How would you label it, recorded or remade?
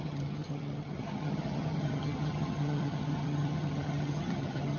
remade